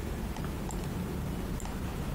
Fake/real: real